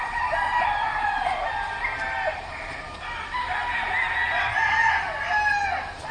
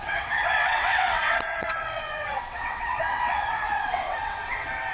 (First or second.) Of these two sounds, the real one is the first